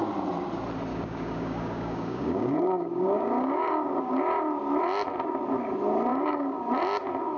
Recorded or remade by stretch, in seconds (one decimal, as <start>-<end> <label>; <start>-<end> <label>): 0.0-0.9 recorded; 0.9-4.2 remade; 4.2-6.1 recorded; 6.1-6.6 remade; 6.6-7.4 recorded